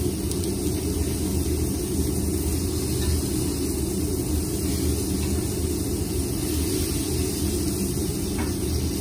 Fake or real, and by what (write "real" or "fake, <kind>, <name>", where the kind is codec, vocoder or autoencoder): real